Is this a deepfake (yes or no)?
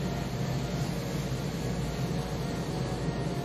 no